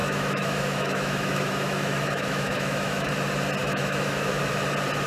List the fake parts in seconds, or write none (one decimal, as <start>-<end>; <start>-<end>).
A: 0.0-3.1; 3.6-4.4

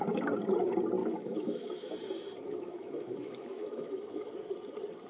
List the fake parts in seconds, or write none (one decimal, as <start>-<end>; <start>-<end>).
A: 1.0-1.9; 2.5-4.3

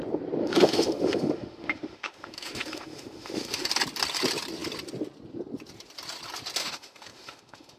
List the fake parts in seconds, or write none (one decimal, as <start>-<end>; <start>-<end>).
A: 0.4-3.7; 6.6-7.8

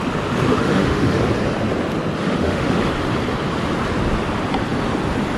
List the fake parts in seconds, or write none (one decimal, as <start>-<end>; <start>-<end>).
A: 0.5-1.2; 2.2-2.8

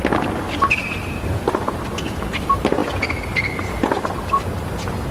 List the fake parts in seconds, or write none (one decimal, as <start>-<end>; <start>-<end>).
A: none